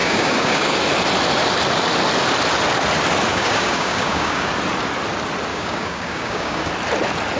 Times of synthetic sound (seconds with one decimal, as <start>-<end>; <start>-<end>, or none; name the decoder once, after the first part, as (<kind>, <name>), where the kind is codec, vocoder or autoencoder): 0.0-0.8 (codec, DAC); 3.3-4.5; 5.5-6.7